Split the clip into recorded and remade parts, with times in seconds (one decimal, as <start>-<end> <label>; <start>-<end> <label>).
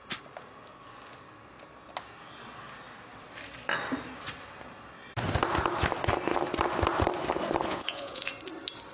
0.0-7.7 recorded; 7.7-8.3 remade; 8.3-8.9 recorded